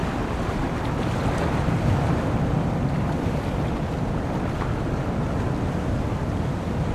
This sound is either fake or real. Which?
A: real